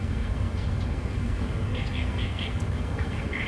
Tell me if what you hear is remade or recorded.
remade